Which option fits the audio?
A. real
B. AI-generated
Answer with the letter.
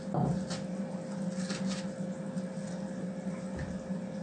A